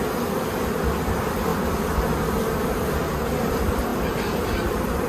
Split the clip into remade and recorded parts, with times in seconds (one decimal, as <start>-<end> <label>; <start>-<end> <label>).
0.0-5.1 recorded